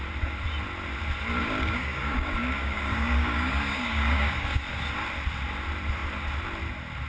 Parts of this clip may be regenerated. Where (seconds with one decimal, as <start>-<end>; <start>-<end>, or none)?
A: 1.4-4.6